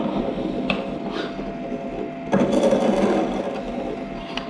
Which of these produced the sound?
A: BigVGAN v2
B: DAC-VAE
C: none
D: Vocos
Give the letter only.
C